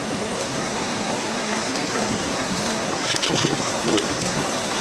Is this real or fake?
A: fake